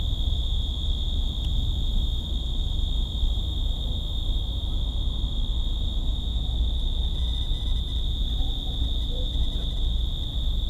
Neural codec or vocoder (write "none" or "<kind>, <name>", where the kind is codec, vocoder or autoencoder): none